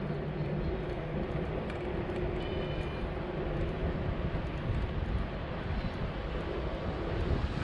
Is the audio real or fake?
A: real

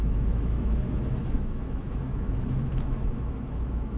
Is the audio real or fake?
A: fake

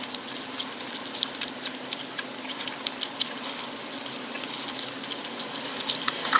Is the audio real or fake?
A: real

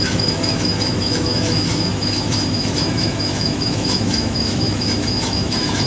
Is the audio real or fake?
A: fake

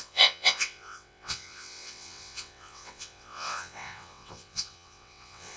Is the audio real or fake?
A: fake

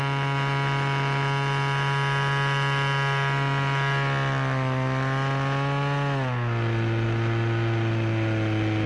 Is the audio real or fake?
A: real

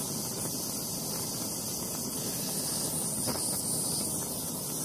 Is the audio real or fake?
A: real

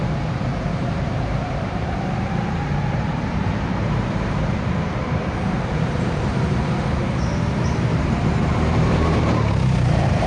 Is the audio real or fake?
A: fake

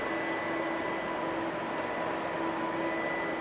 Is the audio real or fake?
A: real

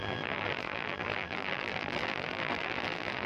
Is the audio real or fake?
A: fake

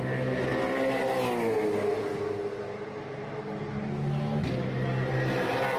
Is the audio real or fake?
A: real